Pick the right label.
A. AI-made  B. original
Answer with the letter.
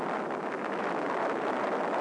B